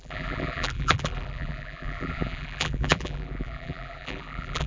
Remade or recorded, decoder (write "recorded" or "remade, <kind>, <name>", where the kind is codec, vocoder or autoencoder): remade, vocoder, BigVGAN v2